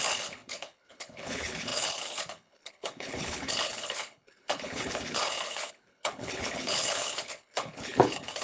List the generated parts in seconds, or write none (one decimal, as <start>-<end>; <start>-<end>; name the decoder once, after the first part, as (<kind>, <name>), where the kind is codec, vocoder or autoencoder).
0.0-8.4 (codec, HILCodec)